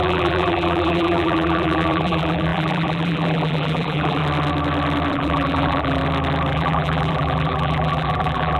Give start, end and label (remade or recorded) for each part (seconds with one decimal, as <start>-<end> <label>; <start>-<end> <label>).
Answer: 0.0-4.2 remade; 4.2-5.1 recorded; 5.1-6.0 remade; 6.0-6.5 recorded; 6.5-8.6 remade